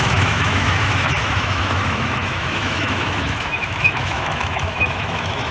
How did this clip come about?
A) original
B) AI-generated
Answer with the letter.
B